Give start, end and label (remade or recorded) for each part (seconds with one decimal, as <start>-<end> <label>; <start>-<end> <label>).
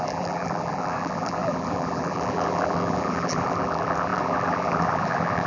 0.0-5.5 remade